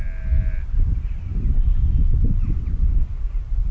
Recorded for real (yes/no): yes